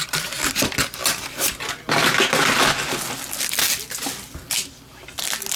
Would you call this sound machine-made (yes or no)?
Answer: no